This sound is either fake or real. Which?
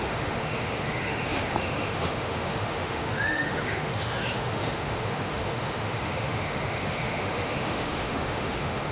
fake